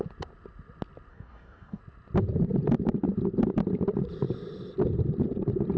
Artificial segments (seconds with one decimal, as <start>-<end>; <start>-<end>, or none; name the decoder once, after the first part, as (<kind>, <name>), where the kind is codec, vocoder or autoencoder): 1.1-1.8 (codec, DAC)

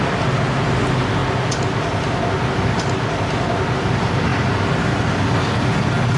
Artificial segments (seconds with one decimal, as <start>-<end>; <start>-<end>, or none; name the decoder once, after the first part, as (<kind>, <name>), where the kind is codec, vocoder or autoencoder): none

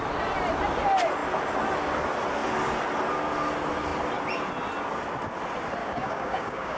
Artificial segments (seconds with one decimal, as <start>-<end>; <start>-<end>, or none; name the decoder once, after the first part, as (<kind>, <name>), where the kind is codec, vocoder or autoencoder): 5.8-6.8 (codec, DAC)